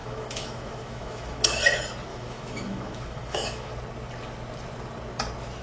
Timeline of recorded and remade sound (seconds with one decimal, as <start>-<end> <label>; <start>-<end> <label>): 0.0-1.6 remade; 1.6-2.1 recorded; 2.1-3.7 remade; 3.7-5.6 recorded